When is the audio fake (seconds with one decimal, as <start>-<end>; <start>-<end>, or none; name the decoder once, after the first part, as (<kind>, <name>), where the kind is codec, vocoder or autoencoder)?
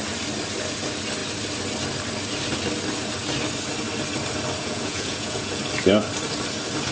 4.6-5.6 (vocoder, Vocos)